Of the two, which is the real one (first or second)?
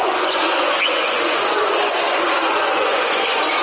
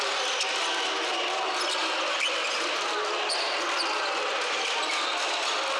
second